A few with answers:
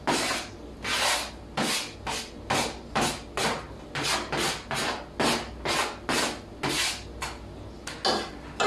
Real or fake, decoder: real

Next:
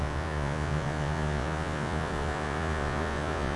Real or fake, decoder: fake, vocoder, Vocos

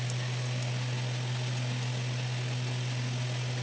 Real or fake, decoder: real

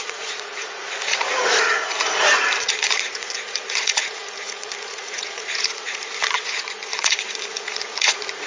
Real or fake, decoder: fake, vocoder, Vocos